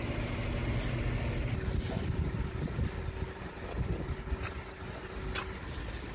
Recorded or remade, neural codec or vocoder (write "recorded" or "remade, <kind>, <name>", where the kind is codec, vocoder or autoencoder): recorded